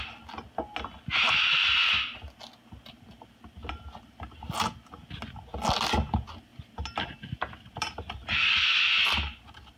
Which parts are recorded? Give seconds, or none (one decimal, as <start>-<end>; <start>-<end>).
0.0-6.5; 8.9-9.8